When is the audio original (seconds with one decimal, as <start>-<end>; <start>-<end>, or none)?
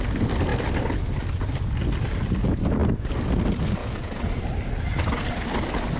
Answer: 0.0-3.8; 4.4-6.0